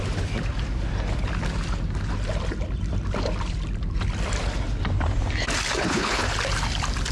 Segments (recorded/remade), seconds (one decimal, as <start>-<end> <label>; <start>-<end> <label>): 0.0-5.8 recorded; 5.8-6.3 remade; 6.3-7.1 recorded